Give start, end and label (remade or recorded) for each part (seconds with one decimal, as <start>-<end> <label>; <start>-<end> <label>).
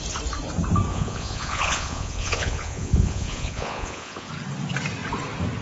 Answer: 0.0-0.9 recorded; 0.9-4.3 remade; 4.3-5.6 recorded